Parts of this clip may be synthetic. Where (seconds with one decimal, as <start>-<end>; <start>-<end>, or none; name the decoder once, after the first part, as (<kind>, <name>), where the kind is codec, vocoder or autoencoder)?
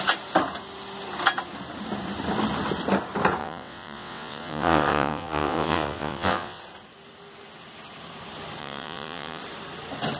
3.4-6.6 (vocoder, WaveNeXt); 8.6-9.4